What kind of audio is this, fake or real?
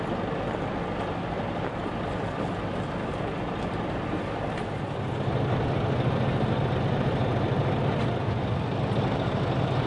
real